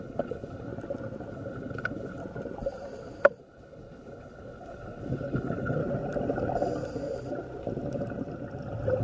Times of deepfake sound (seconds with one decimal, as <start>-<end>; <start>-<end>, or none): 0.0-0.7; 1.3-2.2; 3.4-5.8